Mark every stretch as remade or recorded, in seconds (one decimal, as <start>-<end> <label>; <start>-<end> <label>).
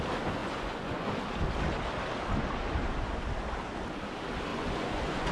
0.0-0.4 recorded; 0.4-1.1 remade; 1.1-4.5 recorded; 4.5-5.3 remade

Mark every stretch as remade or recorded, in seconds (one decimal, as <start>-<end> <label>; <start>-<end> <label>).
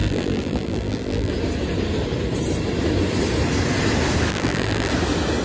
0.0-1.3 remade; 1.3-4.3 recorded; 4.3-4.9 remade; 4.9-5.4 recorded